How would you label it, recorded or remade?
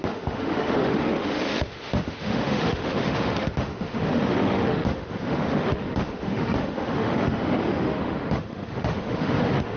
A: remade